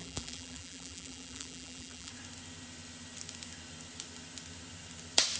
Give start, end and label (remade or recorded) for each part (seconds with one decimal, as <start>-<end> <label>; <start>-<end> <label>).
0.0-2.1 remade; 2.1-5.4 recorded